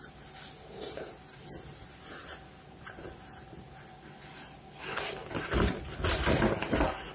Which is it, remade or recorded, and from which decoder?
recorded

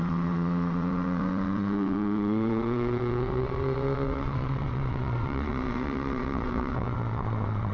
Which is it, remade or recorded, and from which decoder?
remade, vocoder, WaveNeXt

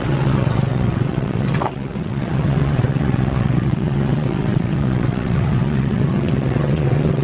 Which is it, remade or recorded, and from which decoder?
remade, vocoder, WaveNeXt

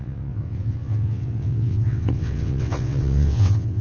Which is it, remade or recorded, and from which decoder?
remade, vocoder, WaveNeXt